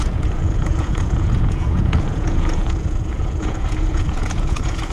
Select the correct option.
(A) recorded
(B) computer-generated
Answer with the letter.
B